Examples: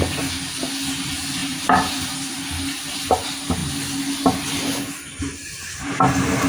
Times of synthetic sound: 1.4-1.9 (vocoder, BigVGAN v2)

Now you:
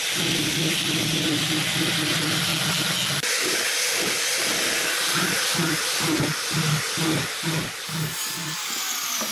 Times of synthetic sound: 0.0-2.5 (vocoder, BigVGAN v2); 3.3-9.3

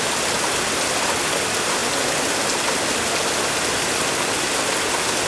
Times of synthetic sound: none